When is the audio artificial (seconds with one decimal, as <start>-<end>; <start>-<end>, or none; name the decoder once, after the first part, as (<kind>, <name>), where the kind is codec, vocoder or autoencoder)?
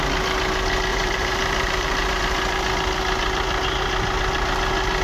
0.9-2.2 (vocoder, BigVGAN v2)